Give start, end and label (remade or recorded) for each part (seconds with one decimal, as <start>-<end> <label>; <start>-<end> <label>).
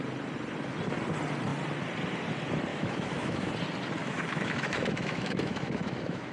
0.0-2.7 recorded; 2.7-3.5 remade; 3.5-4.0 recorded; 4.0-6.3 remade